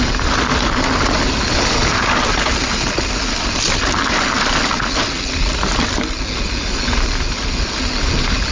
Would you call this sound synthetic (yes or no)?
no